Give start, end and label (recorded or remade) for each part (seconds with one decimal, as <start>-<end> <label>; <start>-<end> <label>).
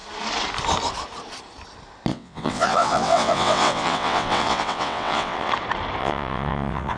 0.0-2.1 recorded; 2.1-5.5 remade; 5.5-6.0 recorded; 6.0-7.0 remade